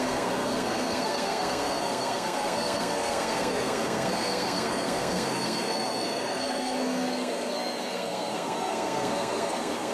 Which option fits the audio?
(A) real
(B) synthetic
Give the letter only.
B